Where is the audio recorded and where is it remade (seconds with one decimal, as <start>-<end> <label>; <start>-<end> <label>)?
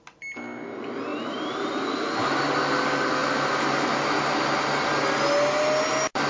0.0-1.1 recorded; 1.1-2.4 remade; 2.4-6.3 recorded